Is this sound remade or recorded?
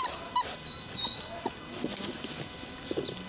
recorded